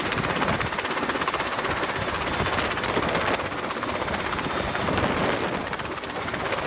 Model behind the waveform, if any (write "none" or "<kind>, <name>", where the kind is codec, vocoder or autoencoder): none